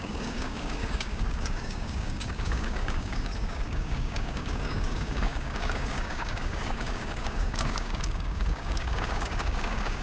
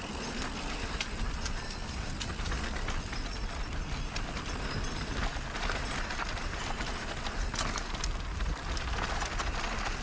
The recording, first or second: second